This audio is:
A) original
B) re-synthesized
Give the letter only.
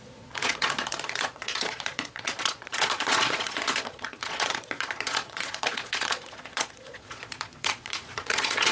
B